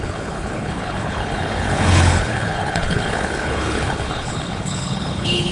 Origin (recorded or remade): remade